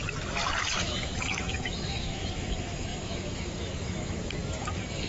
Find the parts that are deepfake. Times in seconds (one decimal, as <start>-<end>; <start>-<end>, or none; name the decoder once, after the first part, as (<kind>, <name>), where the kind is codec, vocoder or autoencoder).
0.8-5.1 (autoencoder, DAC-VAE)